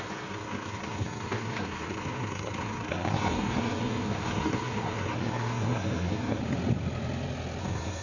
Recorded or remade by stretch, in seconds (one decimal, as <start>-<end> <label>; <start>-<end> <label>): 0.0-6.4 remade; 6.4-7.6 recorded; 7.6-8.0 remade